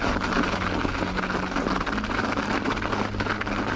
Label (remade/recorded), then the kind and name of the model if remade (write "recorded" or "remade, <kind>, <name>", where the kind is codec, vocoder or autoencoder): recorded